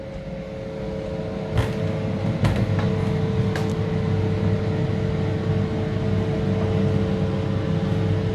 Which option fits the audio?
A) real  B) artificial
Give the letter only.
A